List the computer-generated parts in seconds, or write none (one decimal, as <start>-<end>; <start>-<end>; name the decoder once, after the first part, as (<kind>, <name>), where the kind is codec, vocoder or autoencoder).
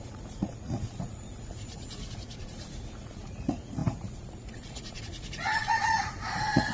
0.0-6.7 (vocoder, Vocos)